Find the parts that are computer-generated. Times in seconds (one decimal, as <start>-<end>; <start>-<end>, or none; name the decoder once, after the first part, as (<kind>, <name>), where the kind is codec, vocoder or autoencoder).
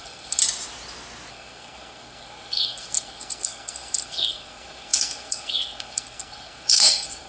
0.0-0.4 (codec, SNAC); 1.3-7.3